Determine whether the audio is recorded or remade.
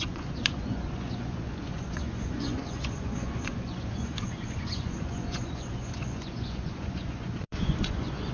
remade